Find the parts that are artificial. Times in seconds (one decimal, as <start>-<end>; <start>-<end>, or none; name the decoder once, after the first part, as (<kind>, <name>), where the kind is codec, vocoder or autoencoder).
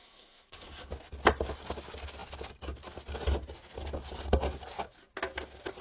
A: 0.0-0.9 (codec, SNAC)